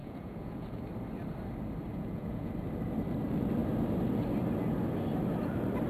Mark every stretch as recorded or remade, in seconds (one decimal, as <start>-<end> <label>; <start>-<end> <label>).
0.0-0.8 remade; 0.8-1.9 recorded; 1.9-2.5 remade; 2.5-5.9 recorded